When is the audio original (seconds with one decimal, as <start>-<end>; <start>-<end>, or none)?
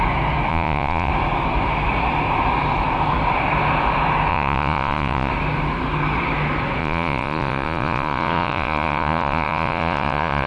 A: 0.0-0.5; 1.1-4.3; 5.3-6.8